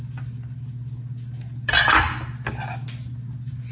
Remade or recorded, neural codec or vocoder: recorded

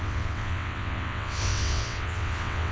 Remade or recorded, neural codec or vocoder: remade, vocoder, WaveNeXt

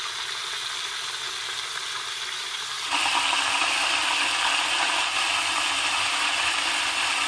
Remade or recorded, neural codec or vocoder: recorded